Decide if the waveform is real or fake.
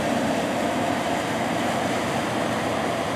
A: fake